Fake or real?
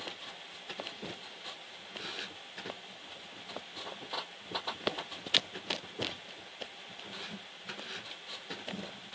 real